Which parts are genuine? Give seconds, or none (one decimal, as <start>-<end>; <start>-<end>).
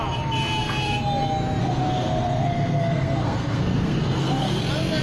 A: 0.0-1.6; 4.6-5.0